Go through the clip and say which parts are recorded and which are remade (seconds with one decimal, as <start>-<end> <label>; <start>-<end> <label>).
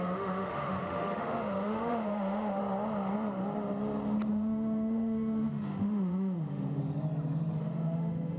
0.0-2.6 remade; 2.6-4.3 recorded; 4.3-6.8 remade; 6.8-7.6 recorded; 7.6-8.4 remade